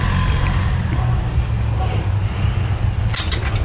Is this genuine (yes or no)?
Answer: yes